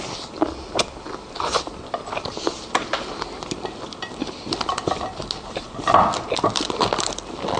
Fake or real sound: real